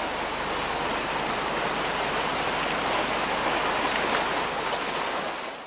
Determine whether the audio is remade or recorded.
recorded